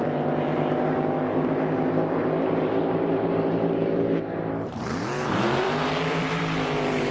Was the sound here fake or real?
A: fake